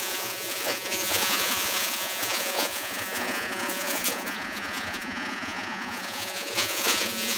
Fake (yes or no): yes